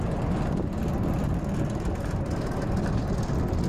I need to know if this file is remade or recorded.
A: recorded